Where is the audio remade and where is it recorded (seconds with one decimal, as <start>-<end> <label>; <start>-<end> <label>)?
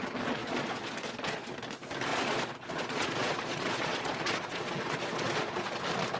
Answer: 0.0-0.4 recorded; 0.4-1.5 remade; 1.5-2.1 recorded; 2.1-5.8 remade; 5.8-6.2 recorded